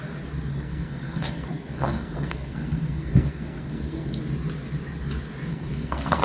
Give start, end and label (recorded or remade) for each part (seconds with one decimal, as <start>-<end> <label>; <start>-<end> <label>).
0.0-0.5 recorded; 0.5-4.2 remade; 4.2-5.5 recorded; 5.5-6.2 remade